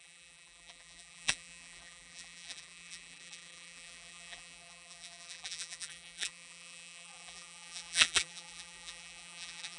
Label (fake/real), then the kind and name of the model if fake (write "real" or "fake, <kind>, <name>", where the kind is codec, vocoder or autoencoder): fake, vocoder, BigVGAN v2